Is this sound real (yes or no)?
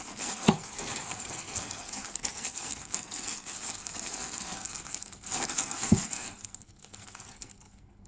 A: no